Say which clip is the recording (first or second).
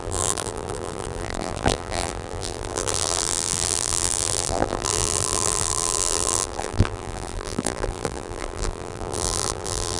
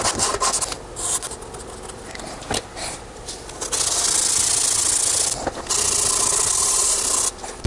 second